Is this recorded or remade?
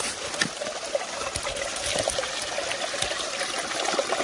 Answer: recorded